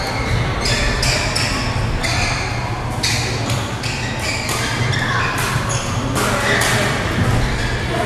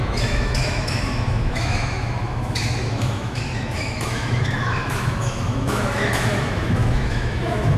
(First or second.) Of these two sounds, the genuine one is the first